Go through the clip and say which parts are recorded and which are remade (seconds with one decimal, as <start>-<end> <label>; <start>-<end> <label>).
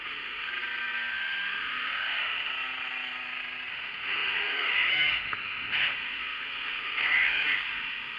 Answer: 0.0-0.5 remade; 0.5-1.1 recorded; 1.1-2.5 remade; 2.5-3.7 recorded; 3.7-8.2 remade